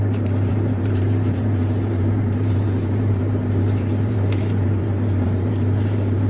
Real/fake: fake